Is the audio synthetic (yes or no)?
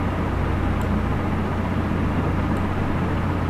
no